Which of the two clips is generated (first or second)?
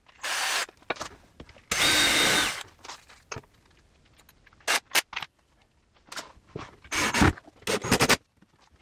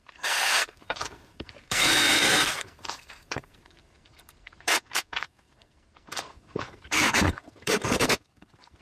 second